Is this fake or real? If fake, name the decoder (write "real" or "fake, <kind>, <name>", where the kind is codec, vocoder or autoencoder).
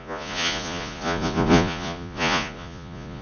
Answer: fake, vocoder, Vocos